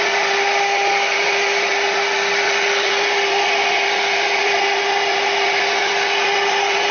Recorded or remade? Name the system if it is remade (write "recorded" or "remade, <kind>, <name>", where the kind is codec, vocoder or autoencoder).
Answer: recorded